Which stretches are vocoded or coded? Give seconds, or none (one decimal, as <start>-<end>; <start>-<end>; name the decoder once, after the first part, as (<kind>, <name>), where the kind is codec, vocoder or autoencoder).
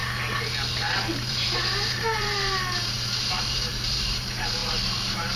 1.2-5.4 (vocoder, BigVGAN v2)